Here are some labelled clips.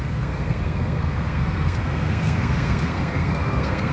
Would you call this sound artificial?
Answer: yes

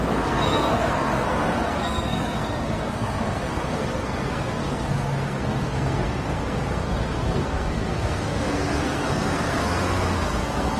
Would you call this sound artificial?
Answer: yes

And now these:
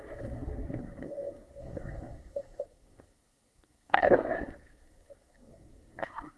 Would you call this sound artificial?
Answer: yes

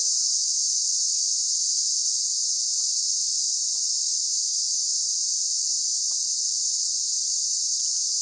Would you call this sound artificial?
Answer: no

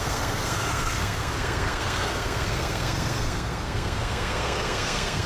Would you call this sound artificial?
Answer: yes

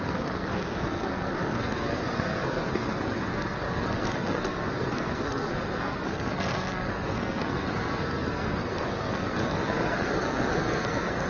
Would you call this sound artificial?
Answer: yes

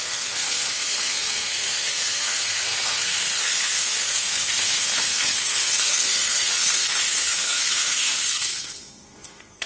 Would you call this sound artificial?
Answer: yes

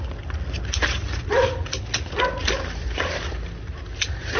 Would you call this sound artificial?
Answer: no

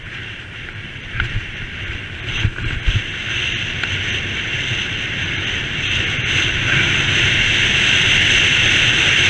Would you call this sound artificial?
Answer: no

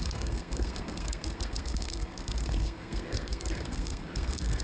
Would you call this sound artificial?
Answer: yes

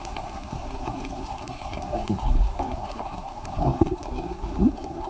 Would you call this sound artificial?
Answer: yes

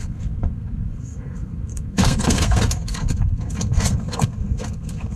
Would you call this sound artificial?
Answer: yes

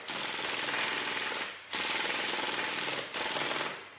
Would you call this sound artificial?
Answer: no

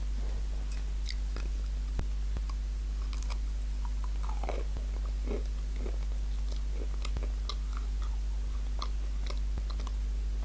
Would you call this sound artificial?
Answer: no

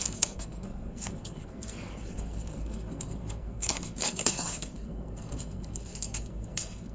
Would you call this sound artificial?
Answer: yes